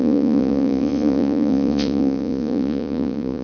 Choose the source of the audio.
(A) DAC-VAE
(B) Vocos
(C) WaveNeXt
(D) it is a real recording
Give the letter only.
B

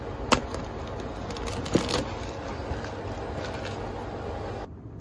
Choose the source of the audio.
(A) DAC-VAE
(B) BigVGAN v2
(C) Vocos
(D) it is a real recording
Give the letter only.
D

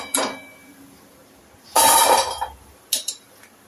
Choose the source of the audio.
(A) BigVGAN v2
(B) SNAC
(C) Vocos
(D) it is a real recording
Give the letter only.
A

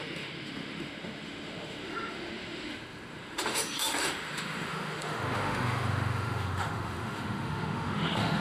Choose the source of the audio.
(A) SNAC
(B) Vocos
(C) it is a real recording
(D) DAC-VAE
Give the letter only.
D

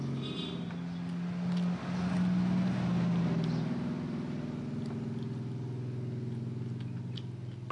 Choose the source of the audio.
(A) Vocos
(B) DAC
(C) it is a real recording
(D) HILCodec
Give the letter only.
C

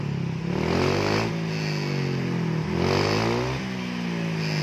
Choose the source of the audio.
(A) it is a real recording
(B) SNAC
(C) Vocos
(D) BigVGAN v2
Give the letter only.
A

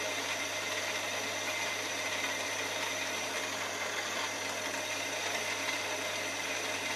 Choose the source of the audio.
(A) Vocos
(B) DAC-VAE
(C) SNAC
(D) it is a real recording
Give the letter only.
D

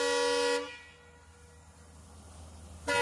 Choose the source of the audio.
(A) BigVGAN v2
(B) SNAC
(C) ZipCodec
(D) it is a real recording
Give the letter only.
D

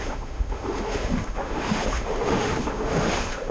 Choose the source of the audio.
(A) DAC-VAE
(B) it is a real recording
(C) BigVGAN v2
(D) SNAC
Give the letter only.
A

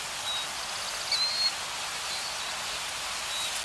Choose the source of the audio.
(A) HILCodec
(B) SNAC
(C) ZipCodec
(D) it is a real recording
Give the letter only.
D